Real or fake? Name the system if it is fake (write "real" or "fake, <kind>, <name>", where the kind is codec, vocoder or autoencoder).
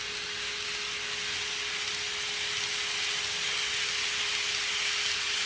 real